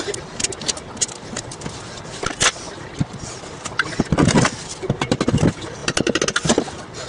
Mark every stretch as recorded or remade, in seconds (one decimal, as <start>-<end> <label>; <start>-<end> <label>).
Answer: 0.0-7.1 recorded